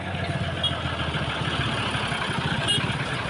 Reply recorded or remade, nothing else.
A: recorded